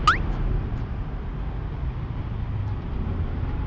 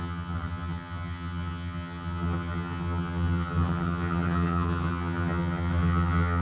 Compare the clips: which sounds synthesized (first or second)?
second